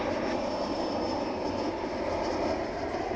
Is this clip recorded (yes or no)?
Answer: yes